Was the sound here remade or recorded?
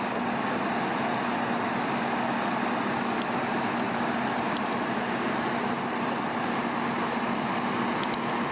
recorded